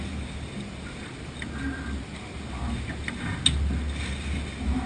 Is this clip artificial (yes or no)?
no